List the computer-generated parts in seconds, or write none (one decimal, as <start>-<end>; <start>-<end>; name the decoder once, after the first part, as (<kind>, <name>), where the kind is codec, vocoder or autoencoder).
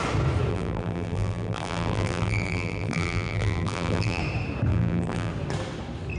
0.5-4.2 (vocoder, BigVGAN v2); 4.7-5.3